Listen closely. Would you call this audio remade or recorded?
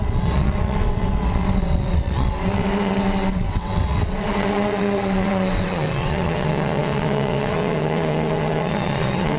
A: remade